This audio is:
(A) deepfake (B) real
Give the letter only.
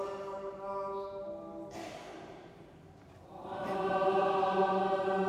A